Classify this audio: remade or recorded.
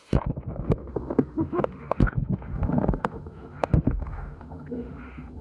remade